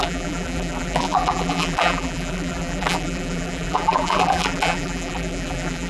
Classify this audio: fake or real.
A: fake